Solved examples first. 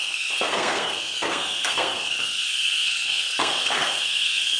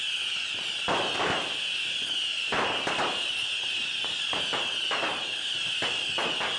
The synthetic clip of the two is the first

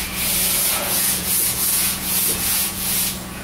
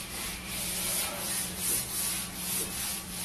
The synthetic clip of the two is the first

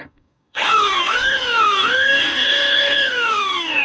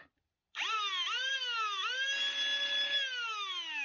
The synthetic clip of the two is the first